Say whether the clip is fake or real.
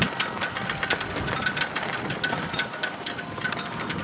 real